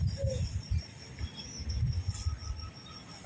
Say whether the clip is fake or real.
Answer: real